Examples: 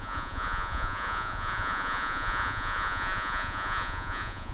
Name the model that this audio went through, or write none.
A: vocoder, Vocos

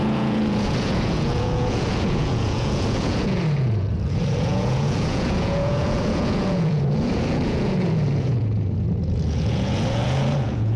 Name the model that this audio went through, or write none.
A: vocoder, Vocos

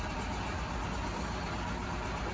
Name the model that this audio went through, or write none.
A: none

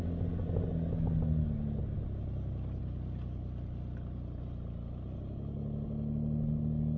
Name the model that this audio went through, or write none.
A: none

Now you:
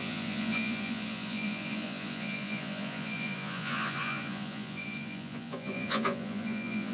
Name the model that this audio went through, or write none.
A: vocoder, Vocos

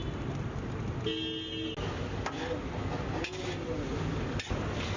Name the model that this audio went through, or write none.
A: none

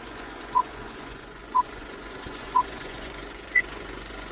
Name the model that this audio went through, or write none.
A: vocoder, Vocos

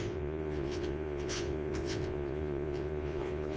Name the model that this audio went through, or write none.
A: vocoder, Vocos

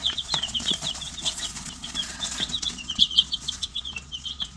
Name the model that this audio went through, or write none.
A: vocoder, Vocos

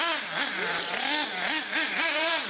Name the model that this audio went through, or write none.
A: none